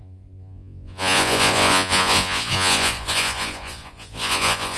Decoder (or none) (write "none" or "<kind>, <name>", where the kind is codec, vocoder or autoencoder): vocoder, Vocos